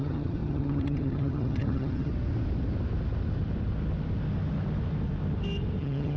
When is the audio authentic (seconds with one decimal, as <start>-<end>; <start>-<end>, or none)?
2.1-5.8